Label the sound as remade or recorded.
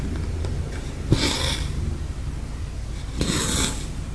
recorded